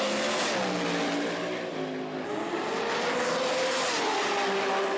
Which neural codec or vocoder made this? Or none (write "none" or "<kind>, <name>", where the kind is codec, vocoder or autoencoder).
none